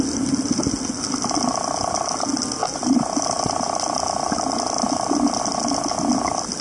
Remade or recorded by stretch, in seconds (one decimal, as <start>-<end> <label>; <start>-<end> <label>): 0.0-6.6 recorded